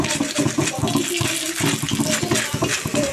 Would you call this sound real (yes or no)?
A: yes